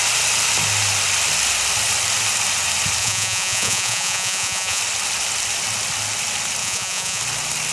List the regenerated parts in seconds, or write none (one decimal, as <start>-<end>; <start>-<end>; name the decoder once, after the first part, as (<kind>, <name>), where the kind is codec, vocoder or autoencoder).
3.0-4.8 (vocoder, Vocos); 6.6-7.2